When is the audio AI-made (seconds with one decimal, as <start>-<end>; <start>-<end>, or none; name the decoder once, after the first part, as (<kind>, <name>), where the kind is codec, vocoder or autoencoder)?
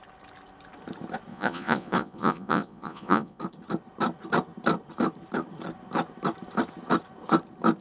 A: 1.3-3.4 (vocoder, Vocos)